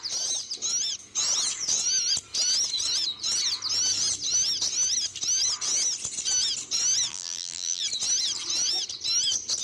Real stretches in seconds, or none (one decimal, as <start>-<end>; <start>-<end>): 0.0-7.1; 7.8-9.6